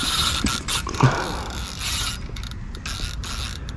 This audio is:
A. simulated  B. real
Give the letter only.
B